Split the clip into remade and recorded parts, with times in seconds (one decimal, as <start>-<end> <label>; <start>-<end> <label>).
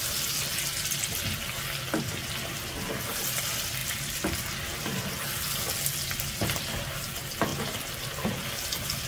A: 0.0-9.1 recorded